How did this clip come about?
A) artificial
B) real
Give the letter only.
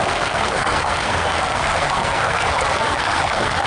A